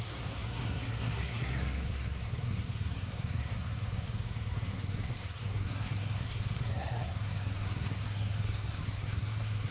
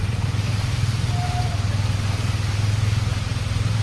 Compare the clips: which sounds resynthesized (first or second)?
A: first